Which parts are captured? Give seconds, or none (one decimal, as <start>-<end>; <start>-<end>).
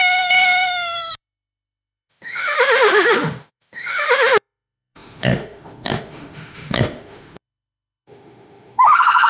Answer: none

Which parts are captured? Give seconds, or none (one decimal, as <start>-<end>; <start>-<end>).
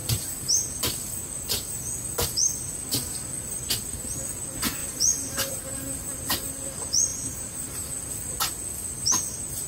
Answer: 0.7-4.8; 5.5-7.1; 7.9-9.7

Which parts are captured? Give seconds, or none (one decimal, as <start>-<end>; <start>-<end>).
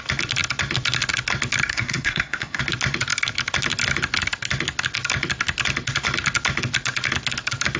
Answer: 0.0-1.7; 2.6-7.8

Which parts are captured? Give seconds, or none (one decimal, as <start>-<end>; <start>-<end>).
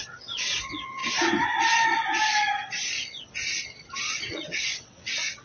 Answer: 1.0-4.2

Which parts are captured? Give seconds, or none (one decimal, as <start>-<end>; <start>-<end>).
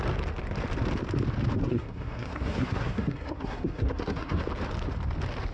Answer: 0.0-1.6; 4.4-5.5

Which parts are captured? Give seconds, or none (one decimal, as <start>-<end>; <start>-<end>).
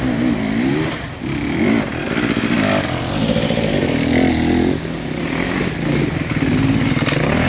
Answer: 0.0-7.5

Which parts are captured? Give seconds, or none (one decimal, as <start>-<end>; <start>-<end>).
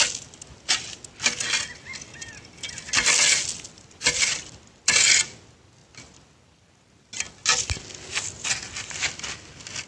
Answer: 0.0-9.9